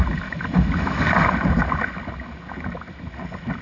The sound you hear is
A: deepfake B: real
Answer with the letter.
B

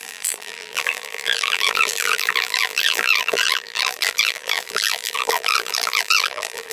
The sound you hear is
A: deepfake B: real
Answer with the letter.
A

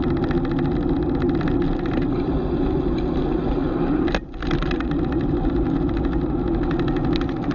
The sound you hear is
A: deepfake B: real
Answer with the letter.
B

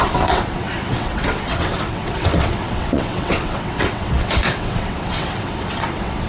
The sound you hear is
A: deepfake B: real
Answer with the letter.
A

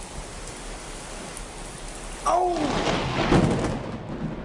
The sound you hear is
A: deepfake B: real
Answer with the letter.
B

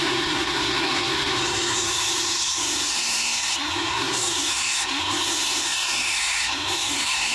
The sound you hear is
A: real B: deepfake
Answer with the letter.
B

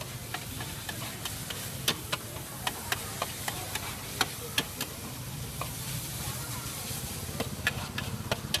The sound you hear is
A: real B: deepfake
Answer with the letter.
A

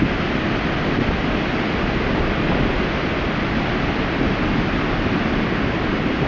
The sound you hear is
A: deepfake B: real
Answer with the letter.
B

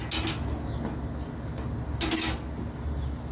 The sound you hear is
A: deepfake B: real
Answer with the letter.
B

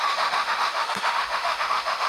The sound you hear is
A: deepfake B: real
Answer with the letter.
A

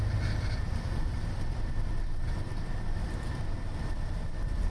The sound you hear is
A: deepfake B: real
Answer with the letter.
A